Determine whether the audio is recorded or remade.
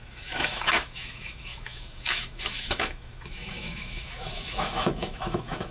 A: remade